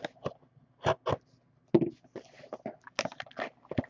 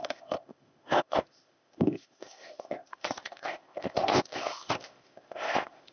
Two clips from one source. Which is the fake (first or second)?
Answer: second